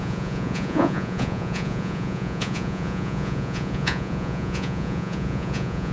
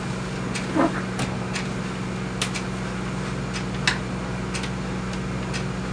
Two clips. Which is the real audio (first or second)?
second